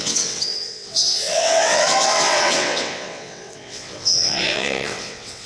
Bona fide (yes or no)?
no